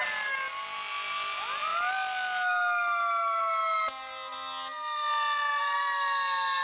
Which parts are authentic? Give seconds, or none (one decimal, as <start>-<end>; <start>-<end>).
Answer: 0.0-6.6